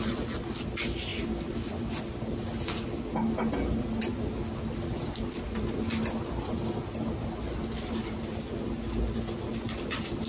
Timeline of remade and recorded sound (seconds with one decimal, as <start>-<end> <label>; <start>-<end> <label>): 0.0-10.3 recorded